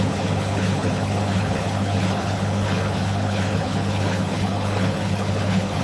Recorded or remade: remade